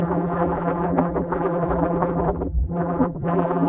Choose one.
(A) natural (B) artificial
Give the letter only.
B